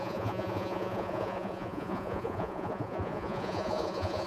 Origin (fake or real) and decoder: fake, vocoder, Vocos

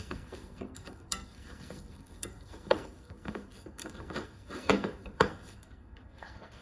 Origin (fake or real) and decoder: fake, codec, SNAC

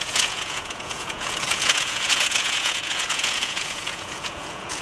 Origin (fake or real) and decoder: fake, vocoder, Vocos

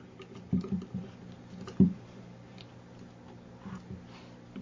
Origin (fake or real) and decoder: real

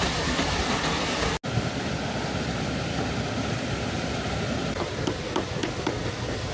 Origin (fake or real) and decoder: real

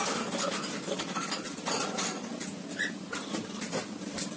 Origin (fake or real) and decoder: real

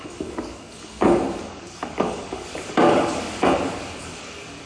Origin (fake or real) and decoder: fake, codec, DAC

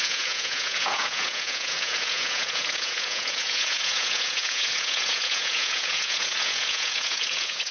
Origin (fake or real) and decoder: fake, vocoder, Vocos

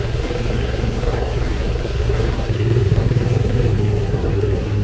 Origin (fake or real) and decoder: fake, codec, SNAC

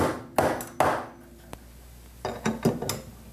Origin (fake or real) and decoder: real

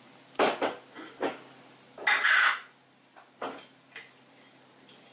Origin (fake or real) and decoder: real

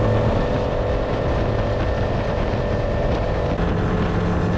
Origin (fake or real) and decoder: real